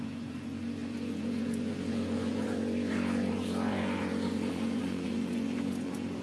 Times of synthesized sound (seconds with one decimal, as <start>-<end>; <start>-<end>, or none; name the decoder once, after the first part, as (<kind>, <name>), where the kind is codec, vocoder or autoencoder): 0.0-6.2 (vocoder, Vocos)

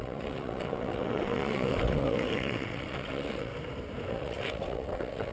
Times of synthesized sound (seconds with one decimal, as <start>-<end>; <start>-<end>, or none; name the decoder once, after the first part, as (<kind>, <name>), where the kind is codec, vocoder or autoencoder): 0.0-3.5 (vocoder, WaveNeXt); 4.1-5.3

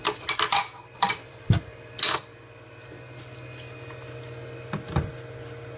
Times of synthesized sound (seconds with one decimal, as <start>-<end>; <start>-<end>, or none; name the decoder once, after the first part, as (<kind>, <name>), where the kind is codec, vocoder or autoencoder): 0.5-2.2 (vocoder, BigVGAN v2)

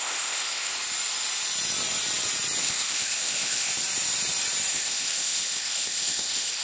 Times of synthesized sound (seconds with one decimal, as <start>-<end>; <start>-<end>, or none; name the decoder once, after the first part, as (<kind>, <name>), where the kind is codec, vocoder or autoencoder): 0.0-0.7 (codec, ZipCodec); 2.6-3.7; 4.7-6.6

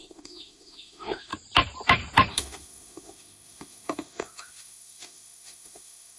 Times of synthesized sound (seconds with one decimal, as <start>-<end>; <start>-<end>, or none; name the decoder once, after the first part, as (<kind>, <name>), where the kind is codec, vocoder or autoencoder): 0.0-1.3 (autoencoder, DAC-VAE); 2.3-6.2

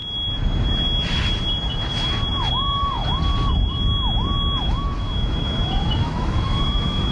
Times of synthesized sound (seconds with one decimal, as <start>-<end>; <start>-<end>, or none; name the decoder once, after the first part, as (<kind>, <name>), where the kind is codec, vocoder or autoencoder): 2.5-3.0 (autoencoder, DAC-VAE); 4.6-7.1

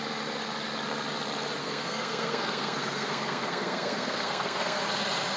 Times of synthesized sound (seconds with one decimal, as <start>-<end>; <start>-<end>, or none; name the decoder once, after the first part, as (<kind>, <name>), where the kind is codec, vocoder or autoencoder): 1.6-4.8 (codec, SNAC)